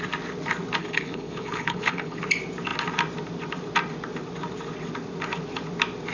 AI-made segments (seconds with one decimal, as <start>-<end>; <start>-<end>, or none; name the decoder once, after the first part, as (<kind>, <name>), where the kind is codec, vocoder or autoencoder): 0.8-2.2 (codec, HILCodec)